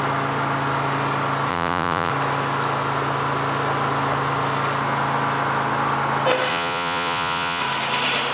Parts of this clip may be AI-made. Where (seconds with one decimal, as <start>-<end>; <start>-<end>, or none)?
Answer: 1.5-2.1; 6.5-7.6